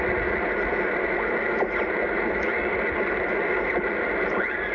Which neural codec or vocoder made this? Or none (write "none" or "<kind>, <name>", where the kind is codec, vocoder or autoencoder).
none